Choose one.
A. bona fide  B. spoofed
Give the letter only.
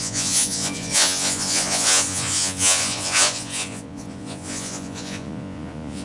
B